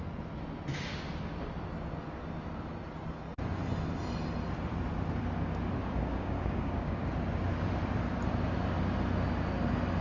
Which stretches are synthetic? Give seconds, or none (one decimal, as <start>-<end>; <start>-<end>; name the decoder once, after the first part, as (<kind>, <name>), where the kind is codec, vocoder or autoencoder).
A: 5.8-6.9 (codec, DAC)